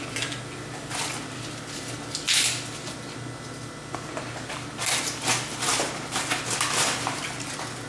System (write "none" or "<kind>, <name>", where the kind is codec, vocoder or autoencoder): none